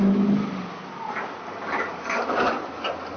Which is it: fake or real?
real